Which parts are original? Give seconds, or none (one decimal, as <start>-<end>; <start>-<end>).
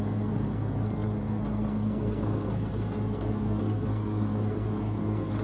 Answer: none